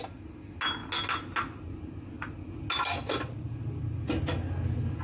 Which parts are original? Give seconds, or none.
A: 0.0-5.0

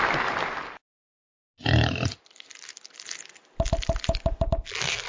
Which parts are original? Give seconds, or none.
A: 0.0-5.1

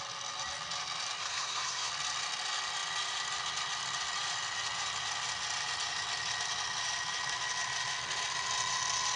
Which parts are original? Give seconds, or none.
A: 0.0-1.2; 1.9-9.2

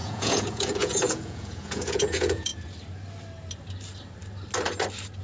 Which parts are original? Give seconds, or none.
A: 2.5-5.2